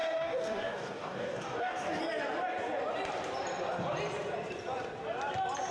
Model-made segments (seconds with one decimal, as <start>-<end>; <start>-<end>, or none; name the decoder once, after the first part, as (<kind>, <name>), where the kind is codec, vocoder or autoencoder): 0.0-2.0 (codec, DAC)